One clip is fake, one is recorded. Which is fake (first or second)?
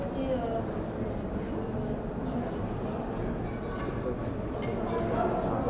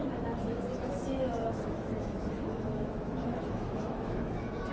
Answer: second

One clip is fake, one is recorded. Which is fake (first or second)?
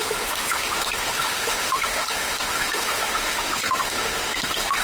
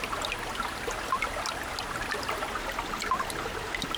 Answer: first